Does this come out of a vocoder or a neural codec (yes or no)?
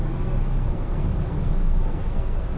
yes